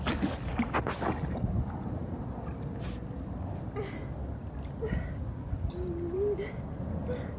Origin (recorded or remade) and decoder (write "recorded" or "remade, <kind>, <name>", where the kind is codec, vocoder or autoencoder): recorded